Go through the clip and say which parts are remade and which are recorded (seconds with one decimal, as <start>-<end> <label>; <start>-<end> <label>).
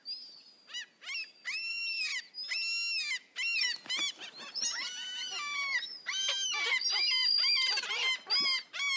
0.0-1.7 recorded; 1.7-2.2 remade; 2.2-4.6 recorded; 4.6-8.3 remade; 8.3-9.0 recorded